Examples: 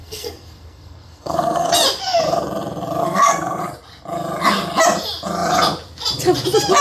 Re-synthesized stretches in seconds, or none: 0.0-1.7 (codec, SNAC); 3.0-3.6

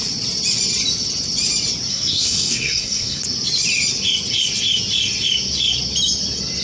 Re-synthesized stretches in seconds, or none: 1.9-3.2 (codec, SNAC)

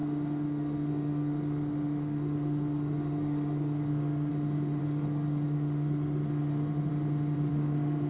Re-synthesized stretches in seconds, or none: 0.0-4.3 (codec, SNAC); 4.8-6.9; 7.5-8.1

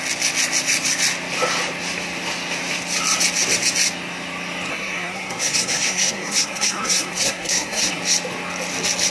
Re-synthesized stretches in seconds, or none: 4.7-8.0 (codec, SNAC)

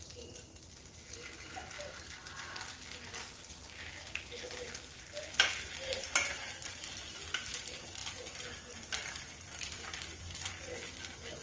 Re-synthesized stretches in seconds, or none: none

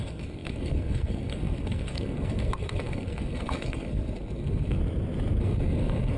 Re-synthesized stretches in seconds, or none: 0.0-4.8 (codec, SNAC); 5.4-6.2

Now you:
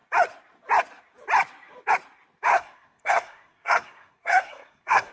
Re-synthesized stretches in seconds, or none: 2.5-5.1 (codec, SNAC)